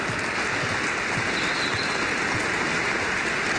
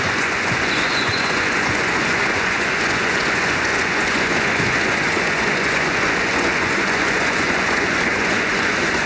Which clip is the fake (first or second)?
second